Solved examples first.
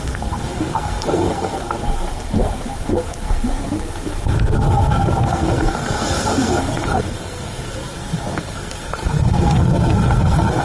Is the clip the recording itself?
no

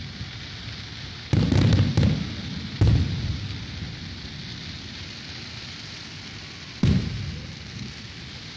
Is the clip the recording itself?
yes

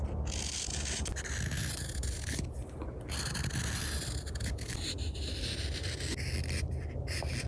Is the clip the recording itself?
yes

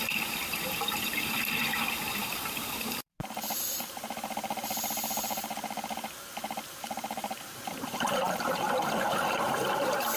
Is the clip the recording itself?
no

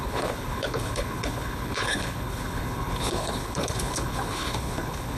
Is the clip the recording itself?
no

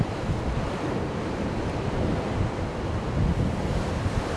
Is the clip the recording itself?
yes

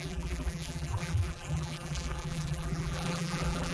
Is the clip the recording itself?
no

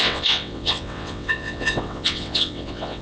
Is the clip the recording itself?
no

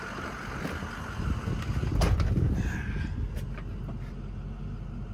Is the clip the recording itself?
yes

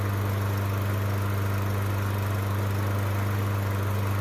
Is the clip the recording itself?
yes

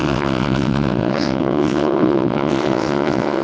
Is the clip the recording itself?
no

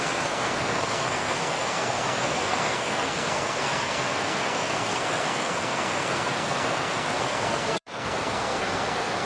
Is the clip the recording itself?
no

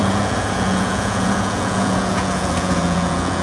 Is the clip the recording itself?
no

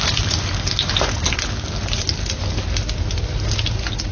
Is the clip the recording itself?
yes